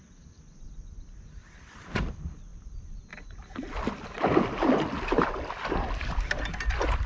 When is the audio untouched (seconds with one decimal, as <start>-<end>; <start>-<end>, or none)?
0.0-7.1